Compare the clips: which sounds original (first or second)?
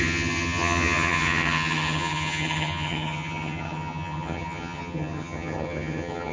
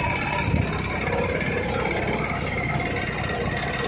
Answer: second